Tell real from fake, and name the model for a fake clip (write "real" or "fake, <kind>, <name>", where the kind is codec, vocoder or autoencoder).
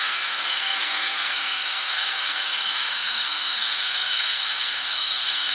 fake, codec, SNAC